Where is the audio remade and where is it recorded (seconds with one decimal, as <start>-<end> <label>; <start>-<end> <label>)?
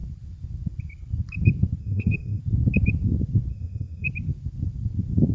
0.0-1.8 recorded; 1.8-2.4 remade; 2.4-3.5 recorded; 3.5-4.1 remade; 4.1-5.3 recorded